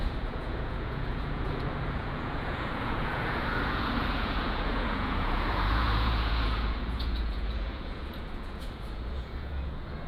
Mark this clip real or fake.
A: fake